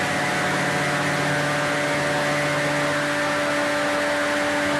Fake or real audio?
real